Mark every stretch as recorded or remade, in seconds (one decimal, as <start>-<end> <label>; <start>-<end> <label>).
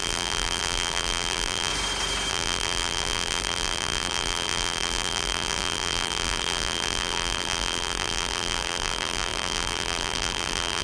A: 0.0-1.7 remade; 1.7-2.3 recorded; 2.3-10.8 remade